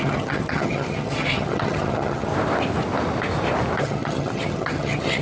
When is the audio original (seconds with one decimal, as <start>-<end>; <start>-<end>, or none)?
2.3-3.8